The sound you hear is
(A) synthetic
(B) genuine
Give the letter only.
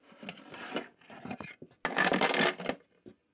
B